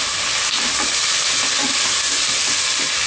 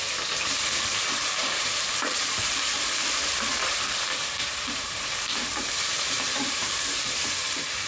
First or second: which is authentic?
first